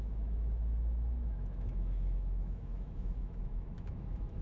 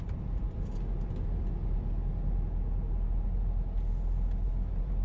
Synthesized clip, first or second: first